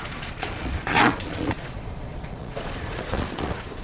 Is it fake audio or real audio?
fake